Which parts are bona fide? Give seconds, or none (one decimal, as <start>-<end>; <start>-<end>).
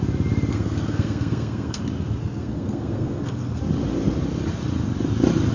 0.0-0.5; 1.8-2.2; 3.6-5.5